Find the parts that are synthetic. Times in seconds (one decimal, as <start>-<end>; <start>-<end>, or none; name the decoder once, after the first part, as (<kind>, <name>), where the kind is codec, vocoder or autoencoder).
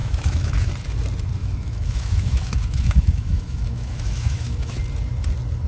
0.0-0.7 (autoencoder, DAC-VAE); 1.4-4.8